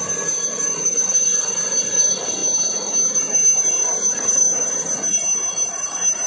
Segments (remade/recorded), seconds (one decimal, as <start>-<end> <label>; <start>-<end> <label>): 0.0-6.3 recorded